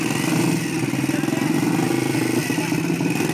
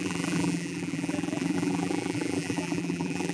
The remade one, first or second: second